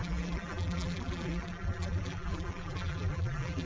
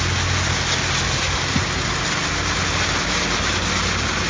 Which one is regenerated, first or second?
first